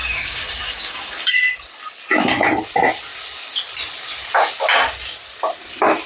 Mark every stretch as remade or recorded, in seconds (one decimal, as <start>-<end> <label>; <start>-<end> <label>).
0.0-1.4 remade; 1.4-6.1 recorded